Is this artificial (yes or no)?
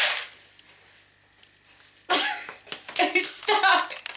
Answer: no